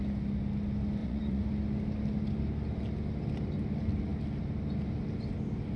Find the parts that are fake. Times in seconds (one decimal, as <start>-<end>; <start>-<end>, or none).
1.0-1.5